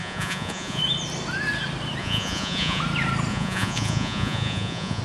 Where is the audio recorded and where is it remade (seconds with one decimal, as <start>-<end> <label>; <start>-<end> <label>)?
0.0-0.8 remade; 0.8-2.0 recorded; 2.0-2.8 remade; 2.8-3.3 recorded; 3.3-5.0 remade